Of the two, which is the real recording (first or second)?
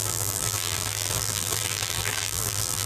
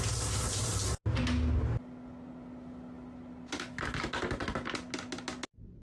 second